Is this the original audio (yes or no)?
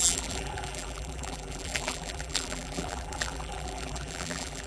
no